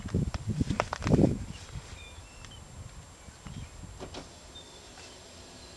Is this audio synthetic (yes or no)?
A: no